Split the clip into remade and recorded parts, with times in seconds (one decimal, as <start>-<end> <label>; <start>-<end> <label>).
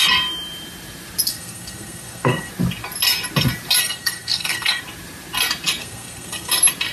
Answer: 0.0-1.3 recorded; 1.3-2.5 remade; 2.5-3.8 recorded; 3.8-4.8 remade; 4.8-5.8 recorded; 5.8-6.5 remade; 6.5-6.9 recorded